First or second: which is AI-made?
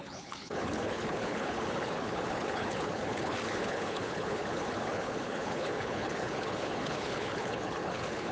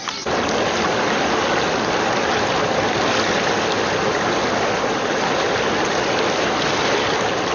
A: first